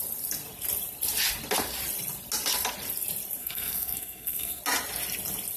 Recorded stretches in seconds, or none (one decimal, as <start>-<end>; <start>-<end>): 0.0-3.4; 4.6-5.6